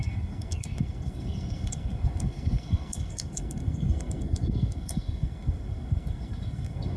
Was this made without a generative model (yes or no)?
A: no